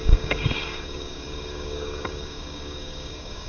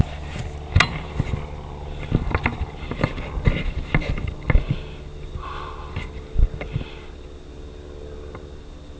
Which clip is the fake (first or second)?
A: first